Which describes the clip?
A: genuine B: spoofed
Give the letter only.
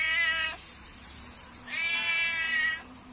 B